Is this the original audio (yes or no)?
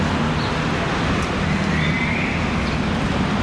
yes